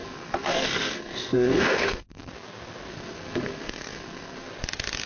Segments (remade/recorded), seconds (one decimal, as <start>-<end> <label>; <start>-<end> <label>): 0.0-2.3 remade; 2.3-2.9 recorded; 2.9-4.5 remade; 4.5-5.1 recorded